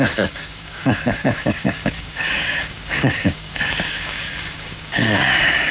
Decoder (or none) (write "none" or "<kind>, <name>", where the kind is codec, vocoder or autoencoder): codec, DAC